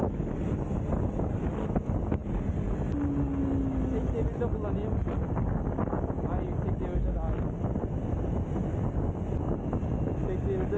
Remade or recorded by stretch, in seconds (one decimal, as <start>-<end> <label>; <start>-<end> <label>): 0.0-10.8 recorded